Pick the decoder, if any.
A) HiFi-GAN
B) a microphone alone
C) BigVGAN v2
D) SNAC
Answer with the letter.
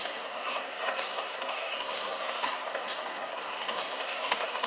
D